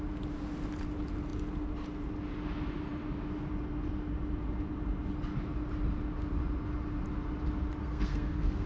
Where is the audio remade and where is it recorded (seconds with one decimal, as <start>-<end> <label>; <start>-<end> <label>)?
0.0-7.8 recorded; 7.8-8.7 remade